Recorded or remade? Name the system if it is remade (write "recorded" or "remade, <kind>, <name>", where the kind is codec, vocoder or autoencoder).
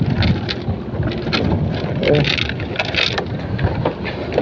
recorded